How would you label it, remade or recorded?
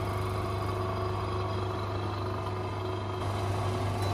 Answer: recorded